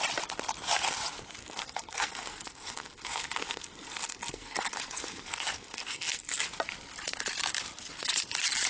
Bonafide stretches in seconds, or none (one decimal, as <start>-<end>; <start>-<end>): 0.0-1.4; 6.4-8.7